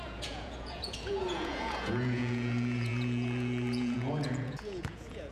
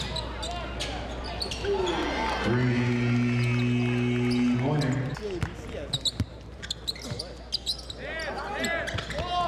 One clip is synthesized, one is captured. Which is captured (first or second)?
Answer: second